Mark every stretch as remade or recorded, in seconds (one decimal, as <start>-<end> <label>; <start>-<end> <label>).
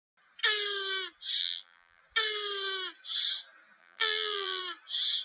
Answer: 0.0-1.4 recorded; 1.4-2.0 remade; 2.0-3.8 recorded; 3.8-4.6 remade; 4.6-5.2 recorded